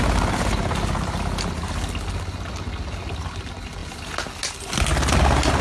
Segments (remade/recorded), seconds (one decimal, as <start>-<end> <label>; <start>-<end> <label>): 0.0-5.6 recorded